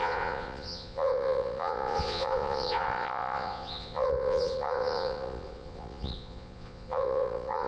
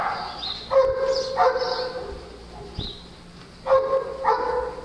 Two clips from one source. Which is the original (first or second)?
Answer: second